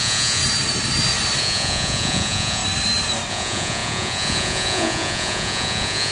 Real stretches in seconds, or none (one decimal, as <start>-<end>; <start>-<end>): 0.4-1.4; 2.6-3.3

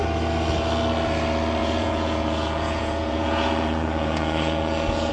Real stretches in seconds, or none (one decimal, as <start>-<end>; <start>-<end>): 0.0-1.6

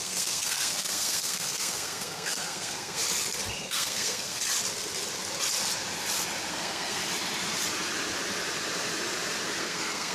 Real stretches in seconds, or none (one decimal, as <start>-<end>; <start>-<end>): 3.0-3.6; 4.4-6.5; 7.0-9.6